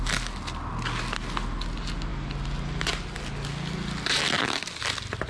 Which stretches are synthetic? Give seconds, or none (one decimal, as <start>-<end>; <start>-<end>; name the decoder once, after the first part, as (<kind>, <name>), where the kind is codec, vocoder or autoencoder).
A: none